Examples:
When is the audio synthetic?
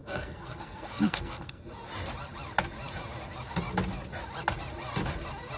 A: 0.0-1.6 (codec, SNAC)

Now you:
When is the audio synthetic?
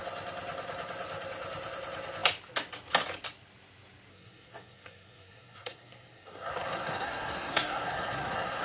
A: 4.1-8.6 (codec, SNAC)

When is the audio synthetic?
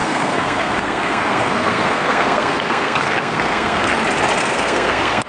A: 0.0-3.9 (codec, SNAC); 4.4-5.3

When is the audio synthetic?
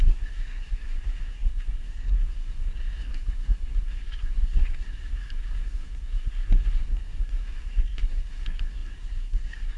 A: 0.0-9.8 (codec, SNAC)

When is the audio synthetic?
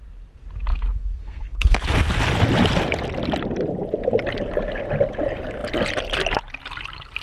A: 0.7-1.8 (codec, SNAC)